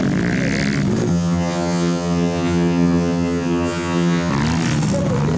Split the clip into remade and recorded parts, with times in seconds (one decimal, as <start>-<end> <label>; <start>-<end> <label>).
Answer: 0.0-1.1 recorded; 1.1-4.3 remade; 4.3-5.4 recorded